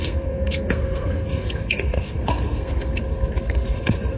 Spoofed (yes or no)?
yes